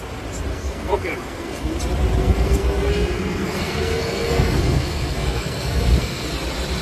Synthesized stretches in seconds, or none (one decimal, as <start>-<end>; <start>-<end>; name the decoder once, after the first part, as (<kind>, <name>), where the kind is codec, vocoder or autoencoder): 0.5-1.8 (codec, SNAC); 2.2-6.3